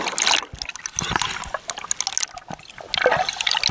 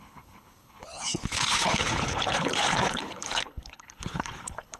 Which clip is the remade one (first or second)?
second